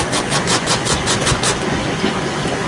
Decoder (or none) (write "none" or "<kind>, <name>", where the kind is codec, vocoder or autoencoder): vocoder, Vocos